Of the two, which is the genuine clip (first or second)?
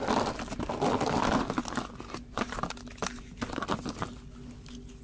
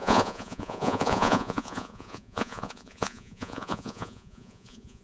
first